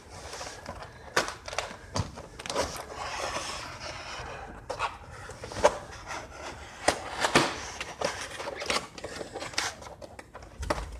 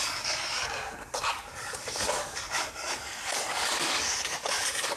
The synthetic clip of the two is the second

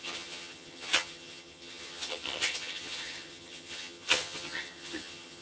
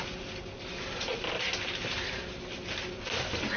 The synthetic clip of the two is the first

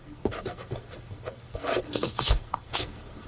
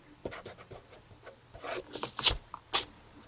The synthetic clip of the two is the first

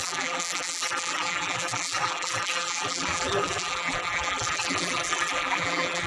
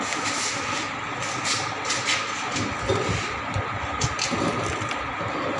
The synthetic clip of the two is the first